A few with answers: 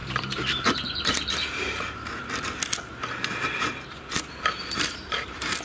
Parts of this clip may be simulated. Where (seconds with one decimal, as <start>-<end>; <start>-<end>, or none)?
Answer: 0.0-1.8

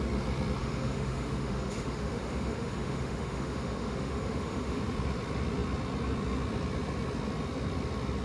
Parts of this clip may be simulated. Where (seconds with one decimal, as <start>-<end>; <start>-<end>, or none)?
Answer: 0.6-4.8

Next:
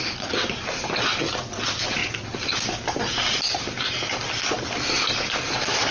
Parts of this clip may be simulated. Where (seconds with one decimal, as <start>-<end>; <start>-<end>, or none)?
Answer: none